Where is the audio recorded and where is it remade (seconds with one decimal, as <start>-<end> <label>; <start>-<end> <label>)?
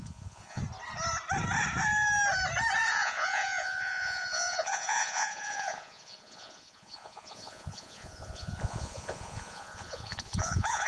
0.0-0.6 remade; 0.6-2.9 recorded; 2.9-10.9 remade